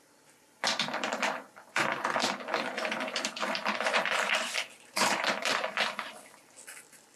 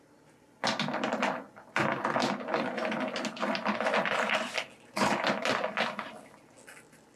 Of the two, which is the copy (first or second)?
first